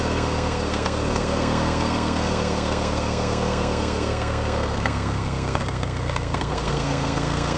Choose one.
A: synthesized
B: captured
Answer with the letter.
A